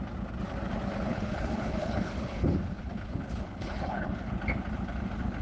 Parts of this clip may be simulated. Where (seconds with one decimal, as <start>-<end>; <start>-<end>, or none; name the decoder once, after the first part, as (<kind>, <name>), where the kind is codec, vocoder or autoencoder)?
1.1-4.3 (codec, HILCodec)